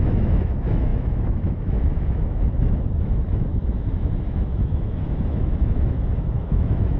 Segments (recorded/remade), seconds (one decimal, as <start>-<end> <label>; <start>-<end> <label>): 0.0-7.0 remade